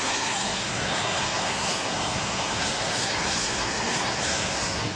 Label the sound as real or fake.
fake